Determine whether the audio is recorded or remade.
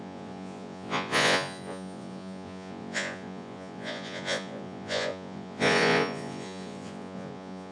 remade